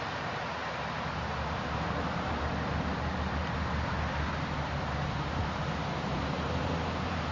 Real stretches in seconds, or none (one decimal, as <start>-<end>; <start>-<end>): 0.6-5.0